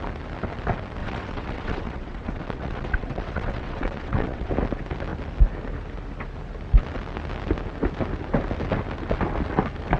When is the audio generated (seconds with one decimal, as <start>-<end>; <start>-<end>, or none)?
1.0-4.5